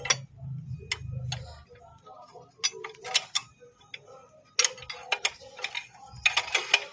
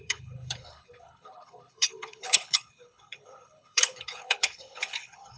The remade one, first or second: second